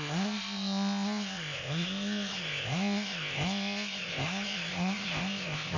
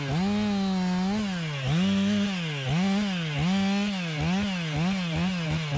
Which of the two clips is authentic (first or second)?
second